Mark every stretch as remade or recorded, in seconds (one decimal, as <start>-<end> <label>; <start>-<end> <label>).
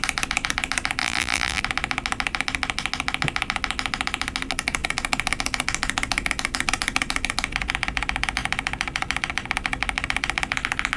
0.0-1.0 recorded; 1.0-1.6 remade; 1.6-11.0 recorded